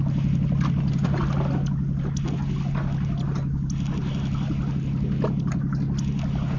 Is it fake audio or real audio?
real